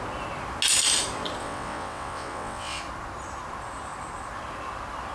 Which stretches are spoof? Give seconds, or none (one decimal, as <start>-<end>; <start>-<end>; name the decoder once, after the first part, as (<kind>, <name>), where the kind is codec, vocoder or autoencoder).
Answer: 1.4-2.8 (vocoder, WaveNeXt)